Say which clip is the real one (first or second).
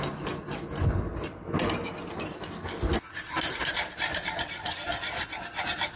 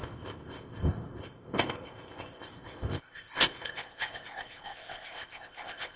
first